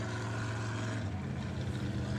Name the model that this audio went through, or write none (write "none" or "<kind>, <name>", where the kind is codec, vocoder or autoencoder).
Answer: none